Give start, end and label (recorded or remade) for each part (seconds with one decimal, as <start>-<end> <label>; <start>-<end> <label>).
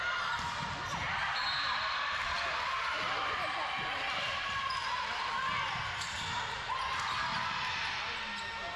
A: 0.0-0.9 recorded; 0.9-5.3 remade; 5.3-8.8 recorded